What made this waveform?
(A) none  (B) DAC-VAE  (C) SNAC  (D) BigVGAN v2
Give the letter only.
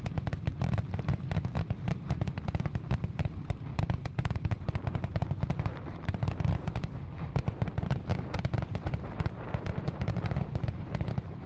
D